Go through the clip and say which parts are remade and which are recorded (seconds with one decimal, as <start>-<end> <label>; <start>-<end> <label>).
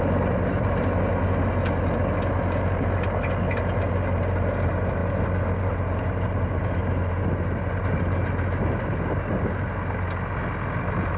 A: 0.0-11.2 recorded